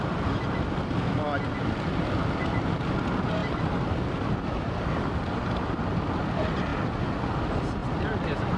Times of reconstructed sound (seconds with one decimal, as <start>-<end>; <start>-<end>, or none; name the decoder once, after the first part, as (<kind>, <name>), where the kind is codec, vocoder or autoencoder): none